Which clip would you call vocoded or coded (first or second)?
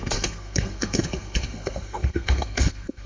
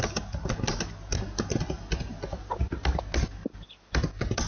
first